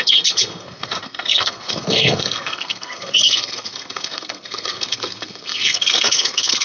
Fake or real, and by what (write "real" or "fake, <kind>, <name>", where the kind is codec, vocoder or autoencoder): fake, codec, SNAC